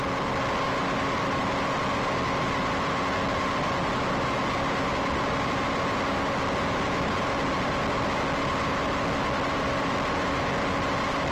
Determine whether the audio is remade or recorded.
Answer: recorded